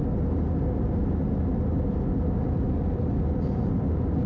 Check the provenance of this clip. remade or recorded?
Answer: recorded